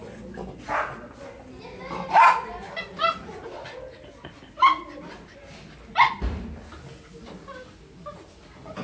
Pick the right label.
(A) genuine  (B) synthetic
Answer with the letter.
A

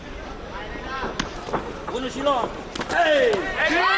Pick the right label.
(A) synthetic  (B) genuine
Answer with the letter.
B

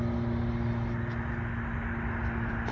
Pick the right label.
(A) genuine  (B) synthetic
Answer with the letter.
A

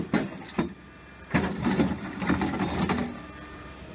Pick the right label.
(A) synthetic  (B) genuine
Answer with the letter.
B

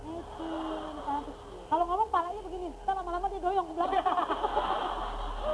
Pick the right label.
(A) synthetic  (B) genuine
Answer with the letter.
B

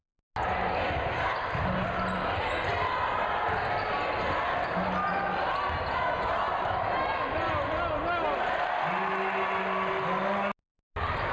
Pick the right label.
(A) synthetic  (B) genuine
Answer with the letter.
B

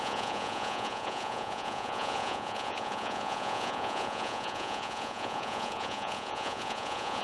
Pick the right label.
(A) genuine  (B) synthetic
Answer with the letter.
B